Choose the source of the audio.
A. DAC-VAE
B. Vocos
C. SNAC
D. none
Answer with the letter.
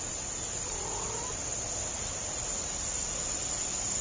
D